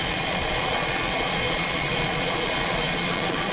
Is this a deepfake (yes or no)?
yes